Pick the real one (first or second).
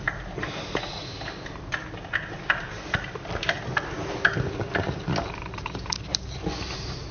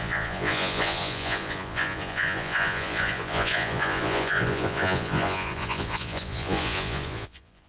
first